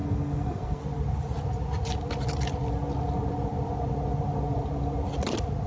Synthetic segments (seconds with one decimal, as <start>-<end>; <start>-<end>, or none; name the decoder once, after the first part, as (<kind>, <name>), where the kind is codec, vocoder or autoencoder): 0.0-0.8 (codec, SNAC)